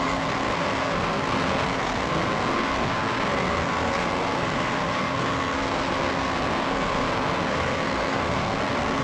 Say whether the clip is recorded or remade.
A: remade